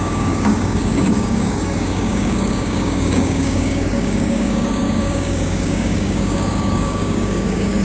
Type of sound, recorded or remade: remade